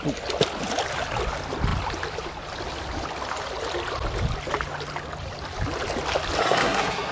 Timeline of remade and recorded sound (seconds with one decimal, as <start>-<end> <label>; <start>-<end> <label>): 0.0-6.4 recorded; 6.4-7.1 remade